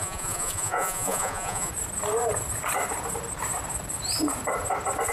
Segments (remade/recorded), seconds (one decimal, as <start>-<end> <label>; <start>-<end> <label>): 0.0-1.7 remade; 1.7-5.1 recorded